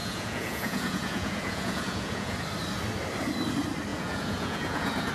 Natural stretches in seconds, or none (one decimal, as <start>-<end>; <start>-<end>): 2.4-3.9

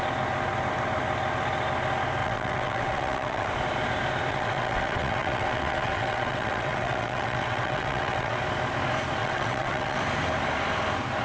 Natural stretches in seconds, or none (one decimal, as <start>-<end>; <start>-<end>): 0.0-2.2; 3.5-4.3; 8.4-9.2; 10.0-11.2

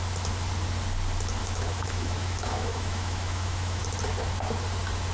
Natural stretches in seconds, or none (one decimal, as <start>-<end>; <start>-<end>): 0.0-1.4; 3.8-5.1

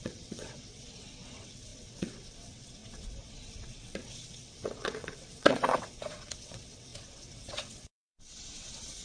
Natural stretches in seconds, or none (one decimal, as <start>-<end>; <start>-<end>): none

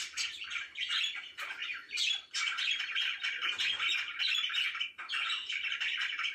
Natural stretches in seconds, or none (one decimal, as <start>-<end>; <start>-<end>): 0.0-6.3

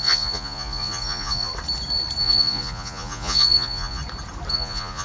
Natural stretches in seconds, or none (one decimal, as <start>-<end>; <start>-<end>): 1.5-2.2; 4.0-4.5